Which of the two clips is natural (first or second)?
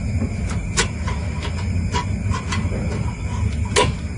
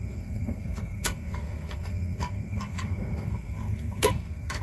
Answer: first